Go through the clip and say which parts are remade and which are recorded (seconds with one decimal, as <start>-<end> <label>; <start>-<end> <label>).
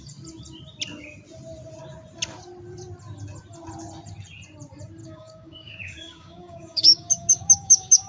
0.0-5.0 recorded; 5.0-8.1 remade